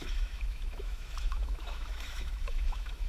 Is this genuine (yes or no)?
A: no